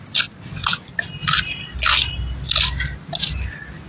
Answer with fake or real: real